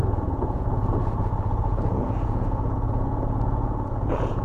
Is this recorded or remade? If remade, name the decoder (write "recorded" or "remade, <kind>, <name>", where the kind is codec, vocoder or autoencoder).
remade, vocoder, Vocos